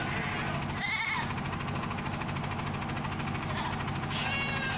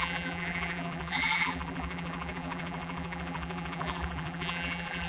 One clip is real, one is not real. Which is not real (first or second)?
second